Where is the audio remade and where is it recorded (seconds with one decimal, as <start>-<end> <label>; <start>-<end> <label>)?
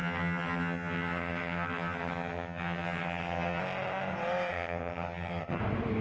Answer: 0.0-3.6 remade; 3.6-4.5 recorded; 4.5-5.6 remade; 5.6-6.0 recorded